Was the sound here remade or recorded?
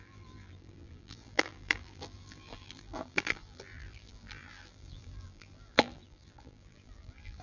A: remade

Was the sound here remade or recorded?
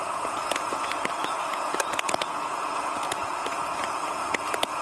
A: remade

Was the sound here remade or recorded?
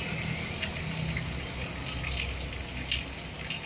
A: recorded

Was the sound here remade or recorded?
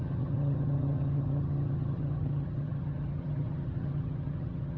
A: remade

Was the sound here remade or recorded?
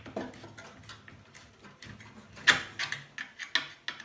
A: recorded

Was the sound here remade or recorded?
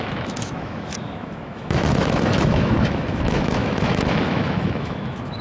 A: remade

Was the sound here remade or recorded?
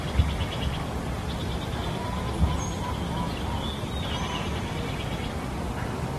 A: recorded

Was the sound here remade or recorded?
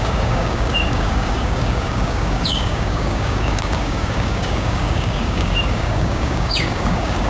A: remade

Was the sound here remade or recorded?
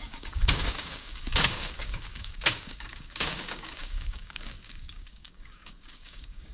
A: remade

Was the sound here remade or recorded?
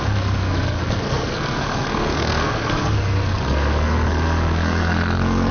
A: remade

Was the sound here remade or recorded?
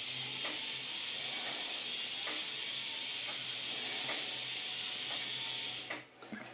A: recorded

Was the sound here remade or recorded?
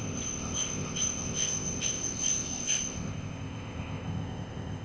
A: remade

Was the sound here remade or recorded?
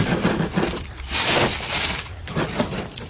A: recorded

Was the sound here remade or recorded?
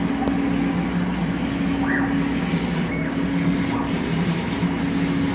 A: recorded